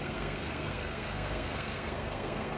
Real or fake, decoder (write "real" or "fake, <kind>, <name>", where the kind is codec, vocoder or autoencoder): fake, codec, SNAC